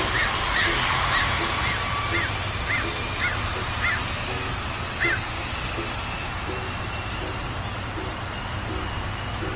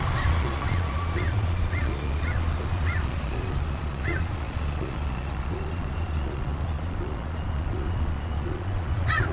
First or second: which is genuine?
first